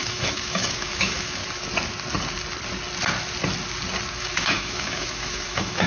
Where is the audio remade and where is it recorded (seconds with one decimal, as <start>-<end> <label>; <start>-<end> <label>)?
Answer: 0.0-1.4 remade; 1.4-4.2 recorded; 4.2-5.9 remade